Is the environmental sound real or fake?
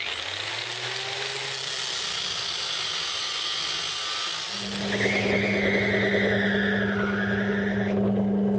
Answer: real